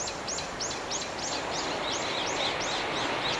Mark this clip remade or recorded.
recorded